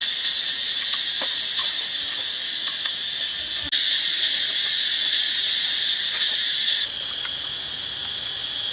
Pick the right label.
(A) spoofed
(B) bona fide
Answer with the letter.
B